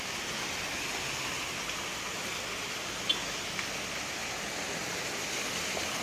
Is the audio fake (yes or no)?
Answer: no